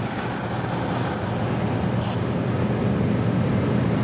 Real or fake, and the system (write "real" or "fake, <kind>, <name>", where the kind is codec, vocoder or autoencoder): real